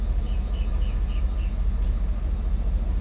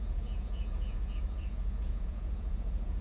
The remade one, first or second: second